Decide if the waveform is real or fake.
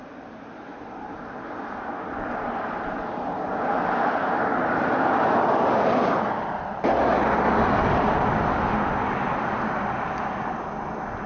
real